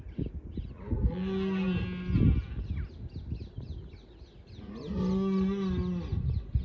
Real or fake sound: real